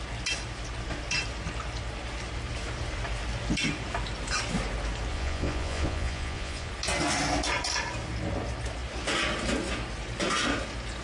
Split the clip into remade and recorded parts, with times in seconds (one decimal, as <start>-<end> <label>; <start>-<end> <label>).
0.0-5.1 recorded; 5.1-6.7 remade; 6.7-11.0 recorded